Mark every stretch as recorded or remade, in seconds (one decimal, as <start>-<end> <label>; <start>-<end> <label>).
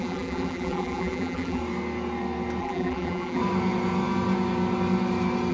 0.0-1.6 remade; 1.6-2.6 recorded; 2.6-3.4 remade; 3.4-5.5 recorded